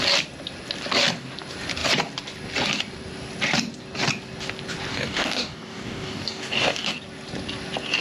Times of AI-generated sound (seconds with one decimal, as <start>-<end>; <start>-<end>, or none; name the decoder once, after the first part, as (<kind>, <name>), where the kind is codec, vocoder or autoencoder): 4.9-6.9 (codec, DAC)